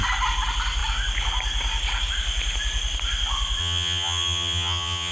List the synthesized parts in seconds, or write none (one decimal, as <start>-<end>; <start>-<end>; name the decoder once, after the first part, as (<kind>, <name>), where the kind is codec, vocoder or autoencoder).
3.6-5.1 (vocoder, HiFi-GAN)